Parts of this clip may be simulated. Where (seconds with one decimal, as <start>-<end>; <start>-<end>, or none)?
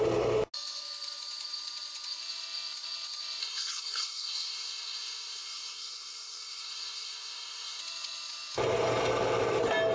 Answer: 3.4-7.8